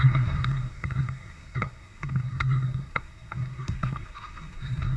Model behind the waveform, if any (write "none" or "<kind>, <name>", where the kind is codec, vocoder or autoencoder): codec, SNAC